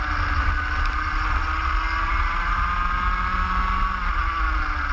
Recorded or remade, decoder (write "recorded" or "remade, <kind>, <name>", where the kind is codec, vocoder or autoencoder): recorded